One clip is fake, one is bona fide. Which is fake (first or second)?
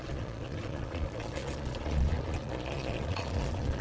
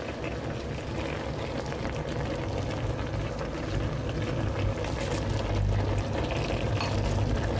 first